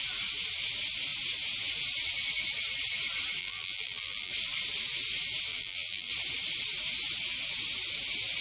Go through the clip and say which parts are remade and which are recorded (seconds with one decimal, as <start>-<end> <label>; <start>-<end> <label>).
0.0-3.4 recorded; 3.4-4.3 remade; 4.3-5.5 recorded; 5.5-6.1 remade; 6.1-8.4 recorded